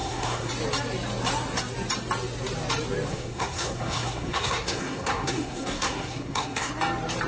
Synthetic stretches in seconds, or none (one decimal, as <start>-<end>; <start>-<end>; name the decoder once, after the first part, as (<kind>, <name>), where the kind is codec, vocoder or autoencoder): 0.0-0.5 (codec, SNAC); 3.1-6.7